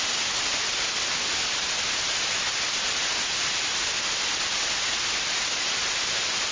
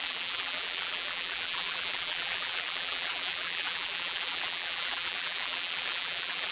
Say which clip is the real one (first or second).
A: first